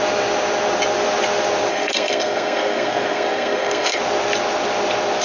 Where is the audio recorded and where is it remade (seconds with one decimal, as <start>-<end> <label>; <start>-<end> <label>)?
0.0-1.7 recorded; 1.7-4.0 remade; 4.0-5.2 recorded